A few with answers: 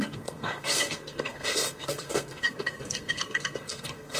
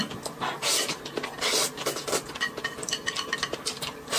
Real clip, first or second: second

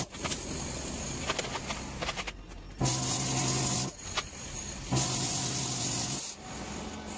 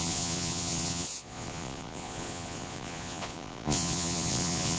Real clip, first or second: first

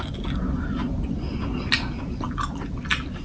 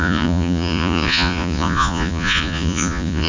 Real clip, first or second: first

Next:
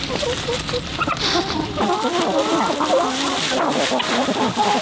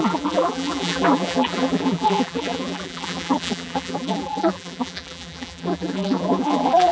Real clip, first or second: first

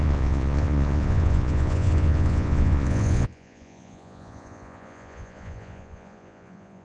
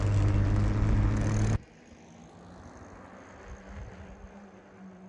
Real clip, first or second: second